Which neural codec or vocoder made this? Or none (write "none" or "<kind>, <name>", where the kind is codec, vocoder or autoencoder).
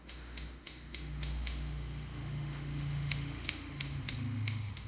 autoencoder, DAC-VAE